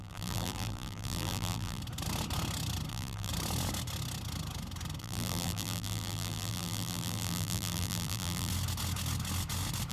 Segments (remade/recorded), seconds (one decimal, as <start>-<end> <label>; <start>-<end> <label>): 0.0-1.8 remade; 1.8-2.9 recorded; 2.9-3.3 remade; 3.3-5.0 recorded; 5.0-8.5 remade; 8.5-9.9 recorded